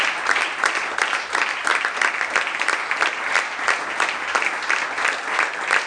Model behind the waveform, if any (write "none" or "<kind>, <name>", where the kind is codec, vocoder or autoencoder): none